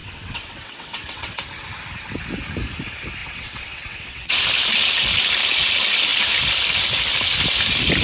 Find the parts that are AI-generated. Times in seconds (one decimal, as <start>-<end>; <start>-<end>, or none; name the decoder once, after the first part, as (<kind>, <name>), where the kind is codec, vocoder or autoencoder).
0.0-1.4 (vocoder, WaveNeXt); 3.2-4.4